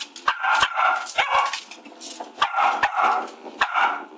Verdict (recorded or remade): recorded